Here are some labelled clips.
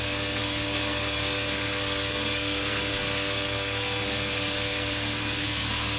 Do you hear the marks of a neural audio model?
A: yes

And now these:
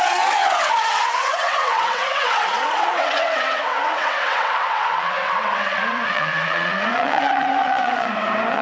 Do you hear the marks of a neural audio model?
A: yes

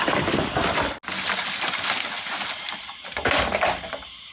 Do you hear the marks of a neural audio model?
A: no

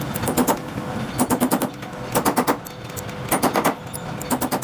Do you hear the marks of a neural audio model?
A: no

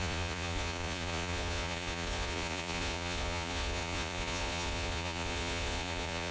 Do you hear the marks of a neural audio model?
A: yes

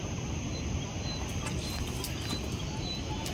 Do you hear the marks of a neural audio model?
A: no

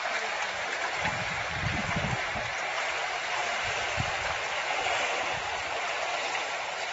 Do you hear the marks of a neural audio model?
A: yes